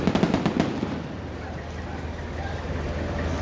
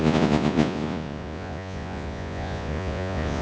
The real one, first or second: first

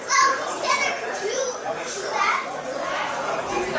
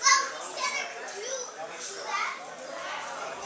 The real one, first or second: second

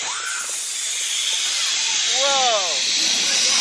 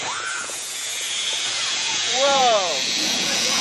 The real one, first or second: first